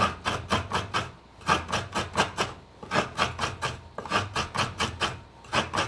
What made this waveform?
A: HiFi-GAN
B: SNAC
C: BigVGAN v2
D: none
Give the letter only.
D